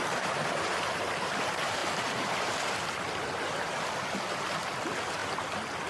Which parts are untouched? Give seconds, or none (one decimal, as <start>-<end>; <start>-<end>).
none